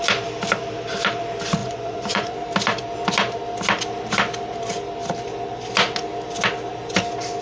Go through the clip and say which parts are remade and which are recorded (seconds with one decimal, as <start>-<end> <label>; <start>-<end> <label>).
0.0-1.6 recorded; 1.6-2.3 remade; 2.3-7.4 recorded